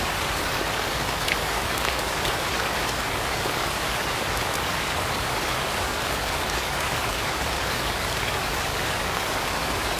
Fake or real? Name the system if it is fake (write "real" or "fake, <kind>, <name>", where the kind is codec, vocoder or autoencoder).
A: fake, codec, DAC